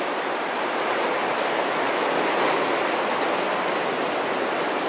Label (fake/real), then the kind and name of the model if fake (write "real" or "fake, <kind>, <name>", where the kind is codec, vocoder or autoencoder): real